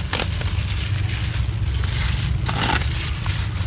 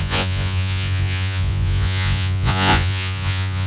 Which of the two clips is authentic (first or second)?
first